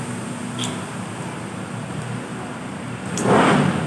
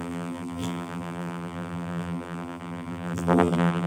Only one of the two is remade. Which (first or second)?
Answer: second